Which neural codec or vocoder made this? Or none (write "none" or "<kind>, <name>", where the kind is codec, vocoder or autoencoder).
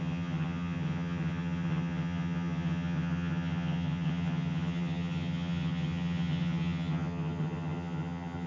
vocoder, HiFi-GAN